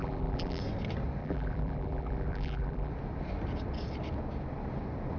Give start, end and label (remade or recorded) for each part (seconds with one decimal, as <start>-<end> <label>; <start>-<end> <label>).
0.0-0.6 remade; 0.6-1.2 recorded; 1.2-2.9 remade; 2.9-5.2 recorded